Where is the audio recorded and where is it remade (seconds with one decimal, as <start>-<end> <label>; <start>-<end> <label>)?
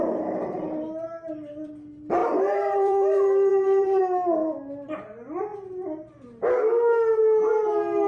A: 0.0-2.2 recorded; 2.2-4.0 remade; 4.0-8.1 recorded